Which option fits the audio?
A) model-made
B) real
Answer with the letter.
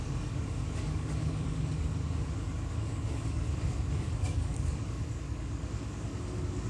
A